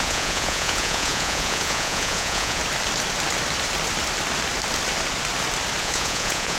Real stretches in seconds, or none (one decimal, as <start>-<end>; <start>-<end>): 2.6-5.8